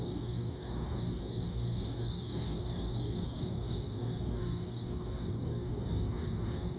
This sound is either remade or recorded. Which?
remade